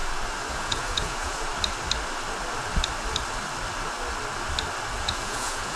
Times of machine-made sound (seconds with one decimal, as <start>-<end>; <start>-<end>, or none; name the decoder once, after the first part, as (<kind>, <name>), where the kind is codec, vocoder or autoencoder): 0.5-1.5 (vocoder, Vocos); 5.0-5.8